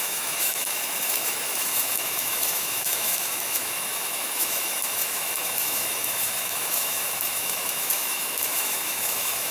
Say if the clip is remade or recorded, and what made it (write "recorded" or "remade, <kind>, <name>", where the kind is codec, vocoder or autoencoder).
remade, autoencoder, DAC-VAE